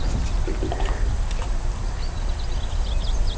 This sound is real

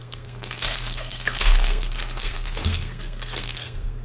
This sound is fake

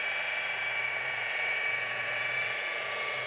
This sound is fake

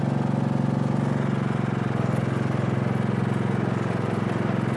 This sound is real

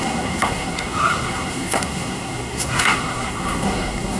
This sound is fake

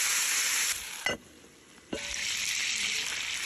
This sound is real